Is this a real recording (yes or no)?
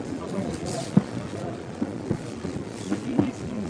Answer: no